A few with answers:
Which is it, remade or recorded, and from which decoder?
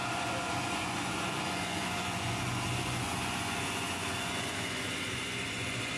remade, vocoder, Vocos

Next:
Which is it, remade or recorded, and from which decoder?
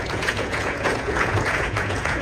remade, vocoder, Vocos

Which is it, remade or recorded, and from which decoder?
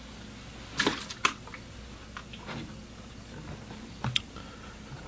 recorded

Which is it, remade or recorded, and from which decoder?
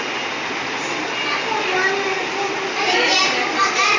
recorded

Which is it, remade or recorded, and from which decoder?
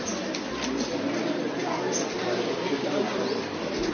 recorded